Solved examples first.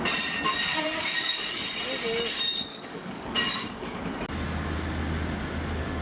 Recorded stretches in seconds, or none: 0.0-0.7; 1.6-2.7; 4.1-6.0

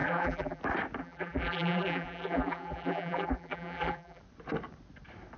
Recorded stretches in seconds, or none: 0.6-1.0; 4.2-5.4